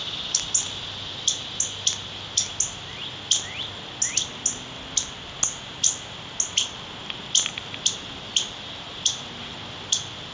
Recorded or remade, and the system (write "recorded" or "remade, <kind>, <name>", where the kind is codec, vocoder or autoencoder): recorded